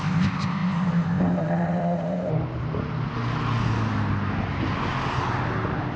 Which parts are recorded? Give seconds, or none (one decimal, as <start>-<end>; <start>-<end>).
2.3-6.0